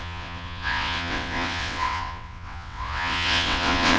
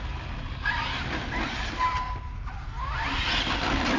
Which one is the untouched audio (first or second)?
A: second